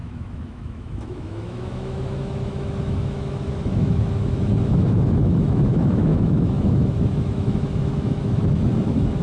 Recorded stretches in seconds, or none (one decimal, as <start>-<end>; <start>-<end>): none